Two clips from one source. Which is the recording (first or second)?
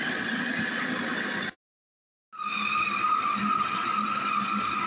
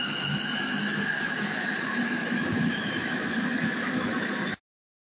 first